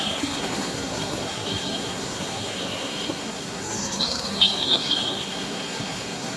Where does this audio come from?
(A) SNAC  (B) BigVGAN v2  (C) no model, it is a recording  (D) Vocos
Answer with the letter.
A